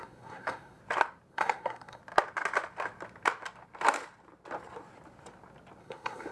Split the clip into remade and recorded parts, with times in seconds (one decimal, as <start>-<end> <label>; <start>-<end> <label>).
0.0-0.8 remade; 0.8-1.3 recorded; 1.3-2.0 remade; 2.0-5.8 recorded; 5.8-6.3 remade